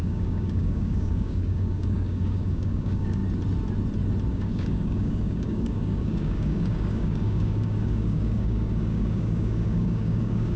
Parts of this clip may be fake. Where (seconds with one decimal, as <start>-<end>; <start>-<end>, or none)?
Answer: 0.0-3.2; 4.3-10.6